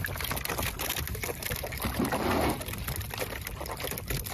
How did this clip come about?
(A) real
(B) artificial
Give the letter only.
A